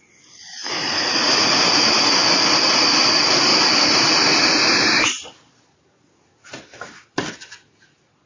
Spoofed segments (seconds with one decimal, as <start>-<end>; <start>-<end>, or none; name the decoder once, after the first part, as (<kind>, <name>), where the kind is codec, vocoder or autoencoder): 0.6-1.6 (vocoder, Vocos)